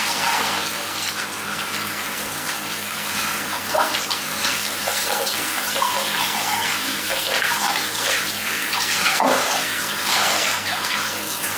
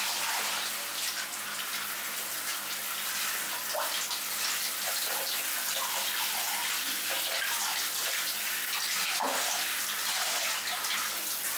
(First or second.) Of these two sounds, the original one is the second